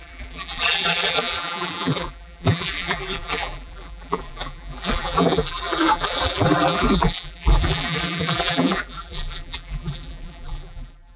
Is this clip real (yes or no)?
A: no